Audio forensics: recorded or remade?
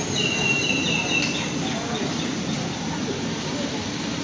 recorded